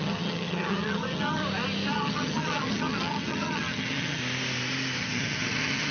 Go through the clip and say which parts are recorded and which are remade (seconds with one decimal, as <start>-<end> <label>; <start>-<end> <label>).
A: 0.0-1.4 remade; 1.4-1.9 recorded; 1.9-4.2 remade; 4.2-5.0 recorded; 5.0-5.9 remade